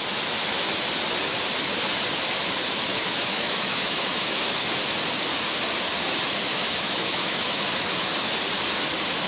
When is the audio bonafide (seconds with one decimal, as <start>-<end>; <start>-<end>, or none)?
0.0-2.9; 4.7-6.5; 8.3-9.3